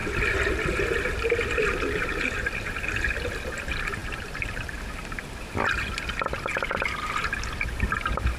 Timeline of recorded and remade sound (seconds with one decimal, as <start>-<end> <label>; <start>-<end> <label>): 0.0-8.4 recorded